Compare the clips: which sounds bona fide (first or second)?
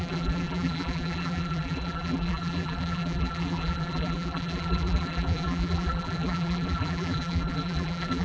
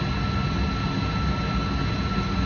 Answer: second